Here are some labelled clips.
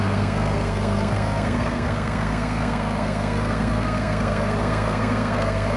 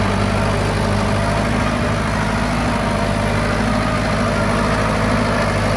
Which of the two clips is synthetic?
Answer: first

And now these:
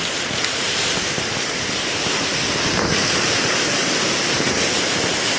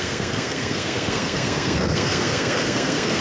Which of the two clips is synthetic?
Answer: second